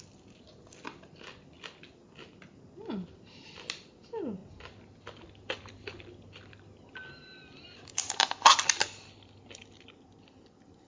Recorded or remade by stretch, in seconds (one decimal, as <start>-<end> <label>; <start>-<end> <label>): 0.0-10.9 recorded